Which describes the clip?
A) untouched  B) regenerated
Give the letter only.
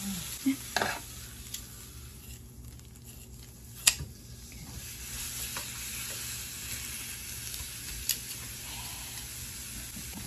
A